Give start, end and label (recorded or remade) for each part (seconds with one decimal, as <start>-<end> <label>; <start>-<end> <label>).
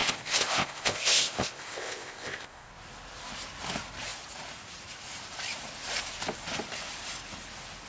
0.0-2.7 remade; 2.7-7.9 recorded